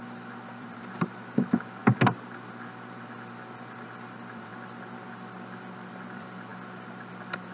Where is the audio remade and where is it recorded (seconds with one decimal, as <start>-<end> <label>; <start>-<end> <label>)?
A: 0.0-1.8 remade; 1.8-2.9 recorded; 2.9-4.5 remade; 4.5-5.9 recorded; 5.9-6.5 remade; 6.5-7.1 recorded; 7.1-7.5 remade